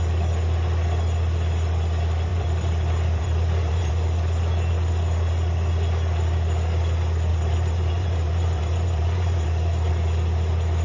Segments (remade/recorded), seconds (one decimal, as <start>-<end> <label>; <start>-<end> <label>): 0.0-2.3 recorded; 2.3-3.9 remade; 3.9-7.3 recorded; 7.3-9.9 remade; 9.9-10.8 recorded